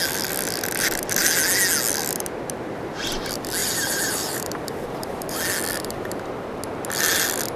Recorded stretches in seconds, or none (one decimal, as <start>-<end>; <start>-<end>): 0.0-3.6; 5.4-7.6